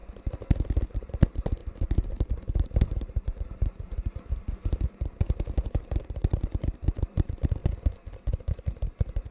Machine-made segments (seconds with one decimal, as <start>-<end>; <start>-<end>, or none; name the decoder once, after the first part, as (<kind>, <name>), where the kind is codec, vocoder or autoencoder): 0.8-3.9 (vocoder, BigVGAN v2); 6.0-7.6